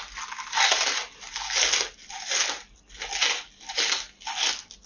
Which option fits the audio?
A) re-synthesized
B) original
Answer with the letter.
B